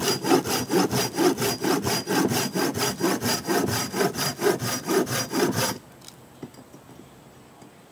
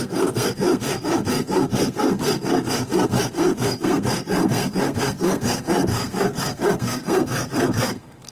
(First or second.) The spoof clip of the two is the second